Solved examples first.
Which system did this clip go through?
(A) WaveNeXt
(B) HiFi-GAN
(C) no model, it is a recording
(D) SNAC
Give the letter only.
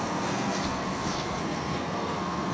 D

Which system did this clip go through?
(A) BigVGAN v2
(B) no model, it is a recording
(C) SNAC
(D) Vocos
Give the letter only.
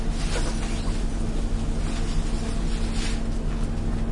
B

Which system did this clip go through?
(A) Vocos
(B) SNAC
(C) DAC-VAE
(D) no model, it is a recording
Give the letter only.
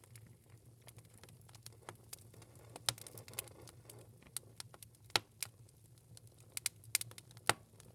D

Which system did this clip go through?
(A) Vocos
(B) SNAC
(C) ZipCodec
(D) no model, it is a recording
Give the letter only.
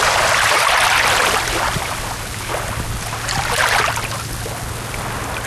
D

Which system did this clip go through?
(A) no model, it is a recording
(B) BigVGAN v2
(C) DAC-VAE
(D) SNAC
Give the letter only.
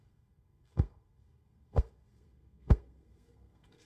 D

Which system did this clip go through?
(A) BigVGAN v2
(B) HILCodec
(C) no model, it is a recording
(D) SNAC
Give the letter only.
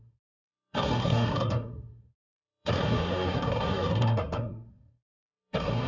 D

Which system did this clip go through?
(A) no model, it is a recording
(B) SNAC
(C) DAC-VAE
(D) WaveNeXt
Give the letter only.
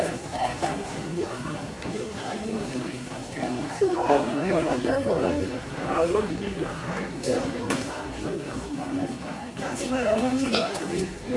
B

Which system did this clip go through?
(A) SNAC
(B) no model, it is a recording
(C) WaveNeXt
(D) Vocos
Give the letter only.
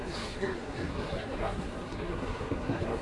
A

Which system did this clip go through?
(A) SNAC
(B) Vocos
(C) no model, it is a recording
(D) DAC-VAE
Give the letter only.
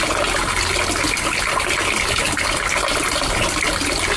C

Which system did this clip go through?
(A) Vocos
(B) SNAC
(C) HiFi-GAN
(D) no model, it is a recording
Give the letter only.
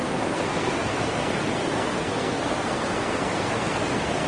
B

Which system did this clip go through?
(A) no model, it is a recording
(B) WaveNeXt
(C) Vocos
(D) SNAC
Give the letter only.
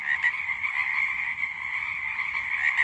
A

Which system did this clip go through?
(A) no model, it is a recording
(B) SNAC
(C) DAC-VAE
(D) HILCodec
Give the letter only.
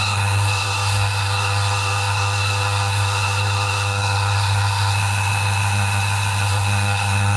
B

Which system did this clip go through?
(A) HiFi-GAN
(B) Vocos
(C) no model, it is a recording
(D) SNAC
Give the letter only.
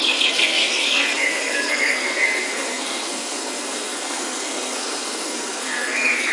D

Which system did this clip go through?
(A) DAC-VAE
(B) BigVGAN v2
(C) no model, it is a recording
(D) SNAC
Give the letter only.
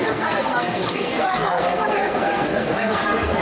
D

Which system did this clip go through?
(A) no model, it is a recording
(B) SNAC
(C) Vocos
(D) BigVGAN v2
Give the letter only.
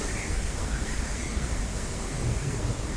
B